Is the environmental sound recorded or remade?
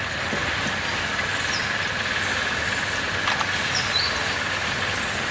recorded